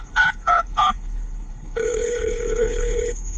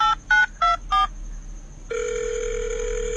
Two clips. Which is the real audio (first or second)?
second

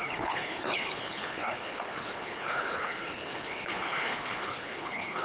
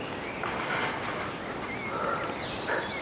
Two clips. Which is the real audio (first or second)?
second